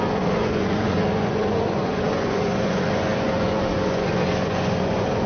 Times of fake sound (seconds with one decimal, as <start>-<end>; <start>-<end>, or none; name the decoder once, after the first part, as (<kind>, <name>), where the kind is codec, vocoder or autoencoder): 0.0-5.3 (vocoder, Vocos)